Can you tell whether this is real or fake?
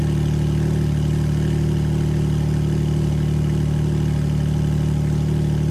real